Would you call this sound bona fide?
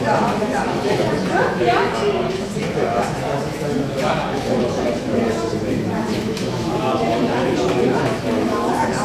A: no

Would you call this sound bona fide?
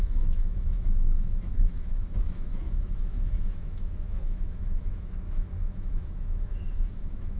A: no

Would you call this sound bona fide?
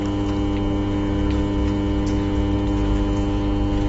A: yes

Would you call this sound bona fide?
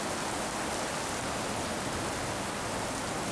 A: yes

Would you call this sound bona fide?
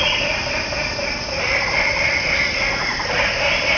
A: yes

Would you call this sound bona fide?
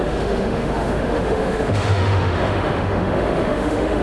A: no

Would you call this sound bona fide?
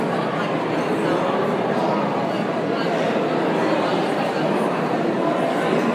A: yes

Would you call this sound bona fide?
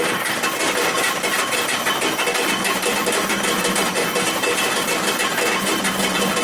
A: yes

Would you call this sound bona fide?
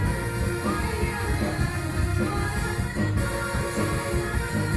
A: yes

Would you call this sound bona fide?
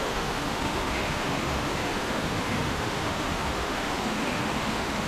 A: no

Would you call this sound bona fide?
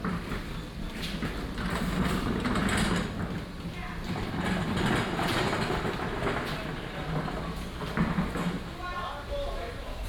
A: yes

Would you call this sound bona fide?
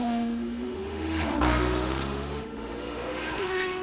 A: no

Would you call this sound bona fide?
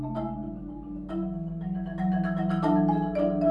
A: yes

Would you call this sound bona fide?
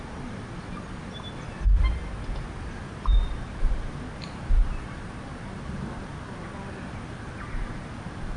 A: yes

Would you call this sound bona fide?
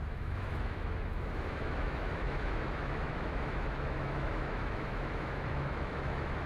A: no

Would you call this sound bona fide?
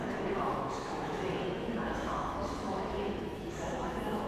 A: no